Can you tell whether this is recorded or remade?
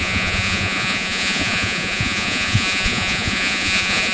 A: remade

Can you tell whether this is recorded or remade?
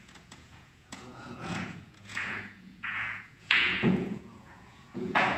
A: remade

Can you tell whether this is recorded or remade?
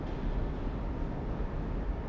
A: recorded